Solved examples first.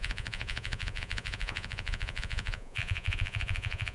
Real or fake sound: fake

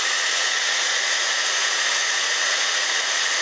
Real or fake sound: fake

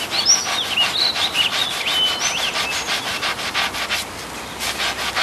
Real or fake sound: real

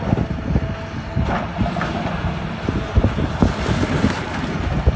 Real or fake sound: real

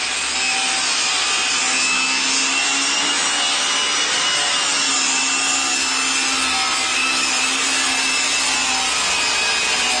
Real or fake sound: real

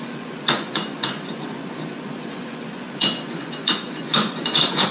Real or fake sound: fake